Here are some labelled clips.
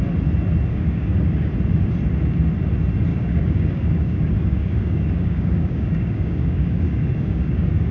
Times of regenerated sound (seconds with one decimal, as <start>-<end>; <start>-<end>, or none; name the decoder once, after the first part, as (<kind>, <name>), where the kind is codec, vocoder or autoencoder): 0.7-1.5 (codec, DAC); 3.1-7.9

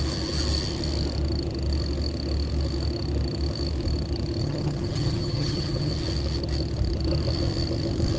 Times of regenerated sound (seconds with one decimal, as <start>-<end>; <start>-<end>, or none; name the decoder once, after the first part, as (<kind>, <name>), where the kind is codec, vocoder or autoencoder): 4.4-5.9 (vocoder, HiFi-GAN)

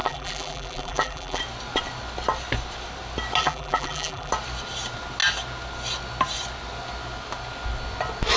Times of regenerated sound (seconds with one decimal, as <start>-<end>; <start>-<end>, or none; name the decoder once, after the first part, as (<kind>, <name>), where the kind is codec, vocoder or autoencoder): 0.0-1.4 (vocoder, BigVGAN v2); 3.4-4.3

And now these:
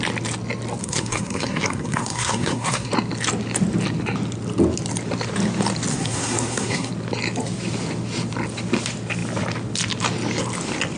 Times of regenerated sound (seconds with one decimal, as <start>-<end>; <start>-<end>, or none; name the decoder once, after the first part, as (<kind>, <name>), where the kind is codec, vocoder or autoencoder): 0.8-2.9 (codec, SNAC); 5.9-6.9